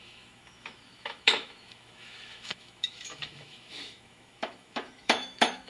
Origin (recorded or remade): remade